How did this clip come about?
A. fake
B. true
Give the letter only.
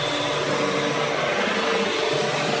B